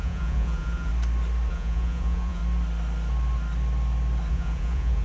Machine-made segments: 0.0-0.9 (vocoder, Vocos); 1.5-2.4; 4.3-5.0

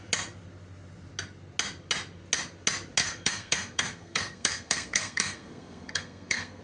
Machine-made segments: 3.0-6.6 (codec, SNAC)

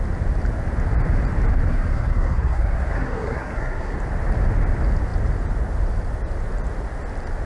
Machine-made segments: 1.7-4.0 (codec, SNAC)

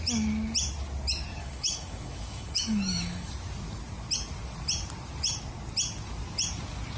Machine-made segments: 1.4-3.3 (autoencoder, DAC-VAE)

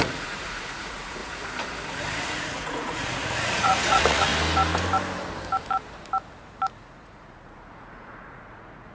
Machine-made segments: 0.0-1.2 (vocoder, Vocos); 2.2-4.3; 6.7-8.9